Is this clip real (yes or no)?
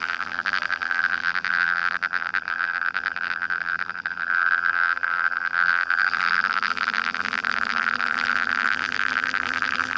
no